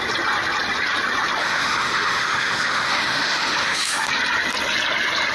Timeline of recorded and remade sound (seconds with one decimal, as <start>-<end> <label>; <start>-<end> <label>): 0.0-1.4 recorded; 1.4-4.1 remade; 4.1-5.3 recorded